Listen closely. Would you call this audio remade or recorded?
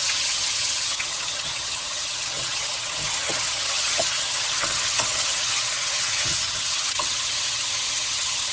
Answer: remade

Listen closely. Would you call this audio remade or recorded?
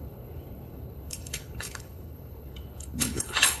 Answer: remade